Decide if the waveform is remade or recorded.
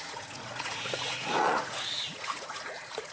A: remade